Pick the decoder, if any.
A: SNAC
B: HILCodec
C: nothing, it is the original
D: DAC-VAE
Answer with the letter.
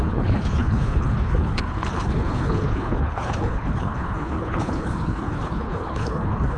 B